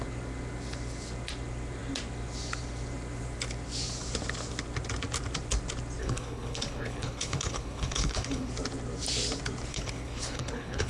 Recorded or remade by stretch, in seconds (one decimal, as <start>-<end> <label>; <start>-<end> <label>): 0.0-6.0 recorded; 6.0-8.5 remade; 8.5-9.7 recorded; 9.7-10.9 remade